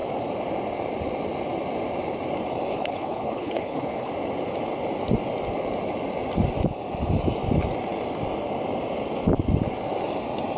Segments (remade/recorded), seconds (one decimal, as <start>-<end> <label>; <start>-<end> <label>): 0.0-2.7 recorded; 2.7-4.1 remade; 4.1-10.6 recorded